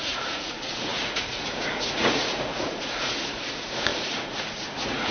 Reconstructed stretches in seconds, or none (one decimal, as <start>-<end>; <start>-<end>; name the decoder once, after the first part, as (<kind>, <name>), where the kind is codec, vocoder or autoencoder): 0.0-5.1 (vocoder, Vocos)

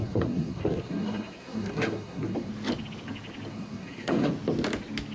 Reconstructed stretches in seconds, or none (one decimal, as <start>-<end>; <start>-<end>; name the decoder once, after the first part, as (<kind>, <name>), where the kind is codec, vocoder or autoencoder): 0.0-2.5 (codec, SNAC); 3.5-4.3

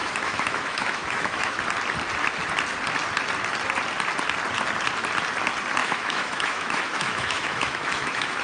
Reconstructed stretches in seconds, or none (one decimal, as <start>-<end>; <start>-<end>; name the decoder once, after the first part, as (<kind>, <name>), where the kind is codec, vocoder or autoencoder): 0.0-1.6 (autoencoder, DAC-VAE); 5.8-8.4

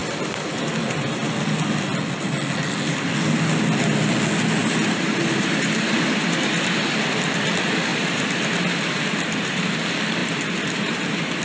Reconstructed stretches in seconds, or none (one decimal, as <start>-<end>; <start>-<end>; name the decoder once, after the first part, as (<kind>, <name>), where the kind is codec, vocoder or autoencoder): 4.6-6.8 (vocoder, BigVGAN v2); 7.9-9.6; 10.2-11.4

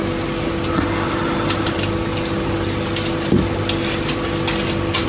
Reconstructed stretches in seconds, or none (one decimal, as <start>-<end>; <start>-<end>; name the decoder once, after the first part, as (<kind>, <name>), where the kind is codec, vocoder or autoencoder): none

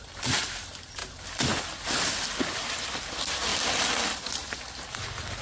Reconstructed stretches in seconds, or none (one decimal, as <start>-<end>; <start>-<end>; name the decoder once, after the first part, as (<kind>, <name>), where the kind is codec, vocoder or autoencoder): none

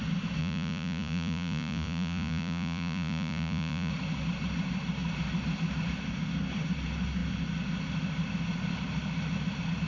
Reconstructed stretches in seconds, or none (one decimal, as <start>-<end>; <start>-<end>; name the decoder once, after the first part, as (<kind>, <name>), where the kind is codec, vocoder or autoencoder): 0.4-3.9 (vocoder, Vocos)

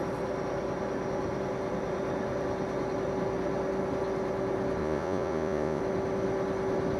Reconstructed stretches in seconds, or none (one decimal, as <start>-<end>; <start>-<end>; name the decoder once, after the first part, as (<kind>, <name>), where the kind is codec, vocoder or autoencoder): 4.8-5.8 (vocoder, Vocos)